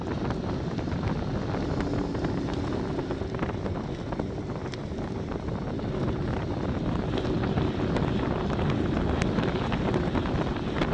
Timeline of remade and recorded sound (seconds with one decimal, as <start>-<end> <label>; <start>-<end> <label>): 0.0-10.9 recorded